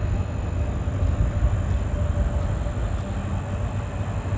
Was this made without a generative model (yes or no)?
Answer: yes